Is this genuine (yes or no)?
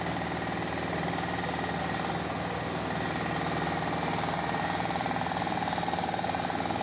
yes